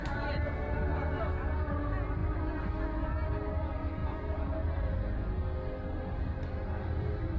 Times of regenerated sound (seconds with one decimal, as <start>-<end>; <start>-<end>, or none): none